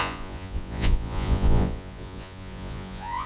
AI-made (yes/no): yes